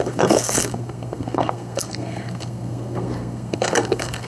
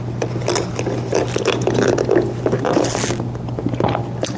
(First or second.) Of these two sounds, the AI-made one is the first